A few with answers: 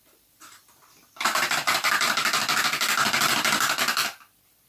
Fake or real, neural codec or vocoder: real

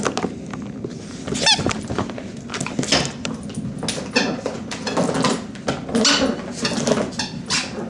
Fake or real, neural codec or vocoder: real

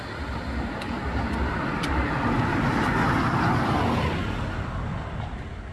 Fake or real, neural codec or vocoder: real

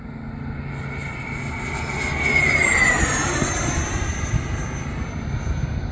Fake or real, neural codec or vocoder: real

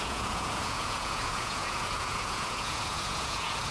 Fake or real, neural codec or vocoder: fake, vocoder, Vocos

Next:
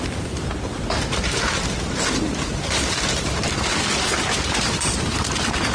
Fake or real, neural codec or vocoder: fake, vocoder, BigVGAN v2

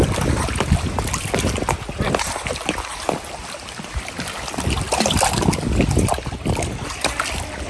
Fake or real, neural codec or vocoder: real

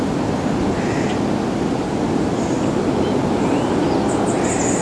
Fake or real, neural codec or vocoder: real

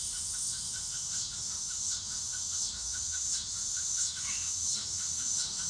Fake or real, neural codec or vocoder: fake, autoencoder, DAC-VAE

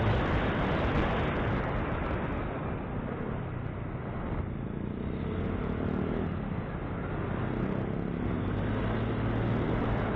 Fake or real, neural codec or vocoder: real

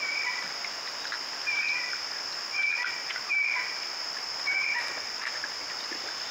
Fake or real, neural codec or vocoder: real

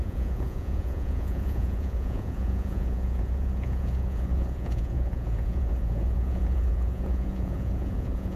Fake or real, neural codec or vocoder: fake, vocoder, Vocos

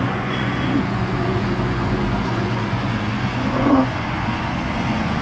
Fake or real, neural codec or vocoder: fake, vocoder, Vocos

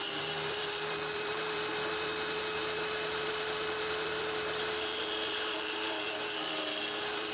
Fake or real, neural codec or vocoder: fake, vocoder, BigVGAN v2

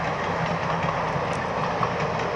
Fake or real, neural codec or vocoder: real